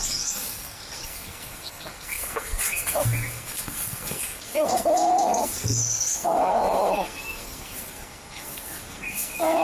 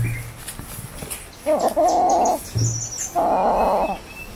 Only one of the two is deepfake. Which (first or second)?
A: first